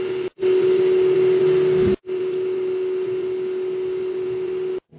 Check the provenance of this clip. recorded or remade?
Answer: recorded